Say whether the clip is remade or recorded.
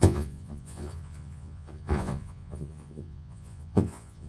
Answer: remade